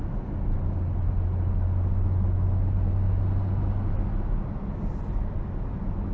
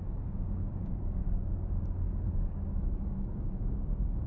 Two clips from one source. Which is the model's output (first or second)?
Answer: second